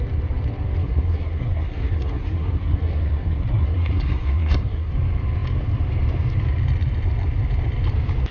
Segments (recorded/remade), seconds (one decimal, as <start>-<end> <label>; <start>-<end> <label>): 0.0-0.8 recorded; 0.8-4.9 remade; 4.9-8.3 recorded